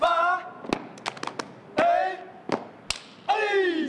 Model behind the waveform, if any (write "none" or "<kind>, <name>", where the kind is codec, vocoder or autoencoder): none